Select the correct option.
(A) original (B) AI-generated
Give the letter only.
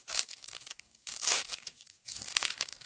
B